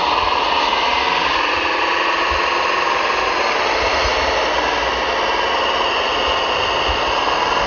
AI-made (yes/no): no